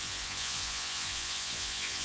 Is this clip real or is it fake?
fake